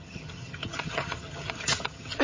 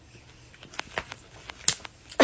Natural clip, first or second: second